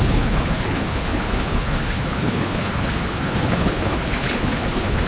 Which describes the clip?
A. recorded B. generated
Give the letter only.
B